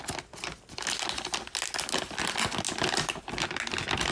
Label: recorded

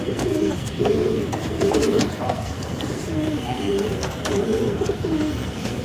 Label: remade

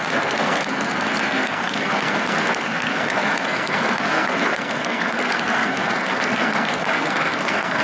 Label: remade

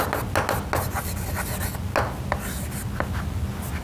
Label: recorded